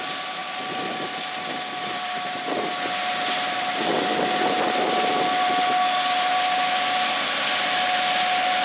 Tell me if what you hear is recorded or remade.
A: recorded